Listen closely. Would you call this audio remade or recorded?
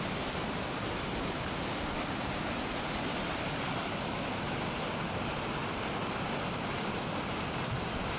recorded